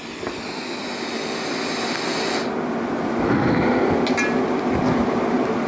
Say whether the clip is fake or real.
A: real